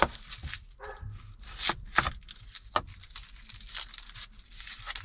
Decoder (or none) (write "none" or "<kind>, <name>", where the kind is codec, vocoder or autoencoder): none